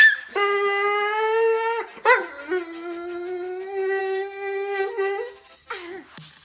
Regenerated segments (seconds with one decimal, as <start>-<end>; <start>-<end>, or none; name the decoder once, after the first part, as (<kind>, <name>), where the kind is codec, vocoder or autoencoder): 4.0-4.9 (codec, SNAC)